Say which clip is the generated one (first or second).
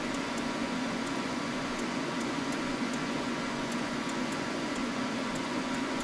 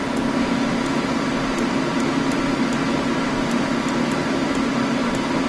first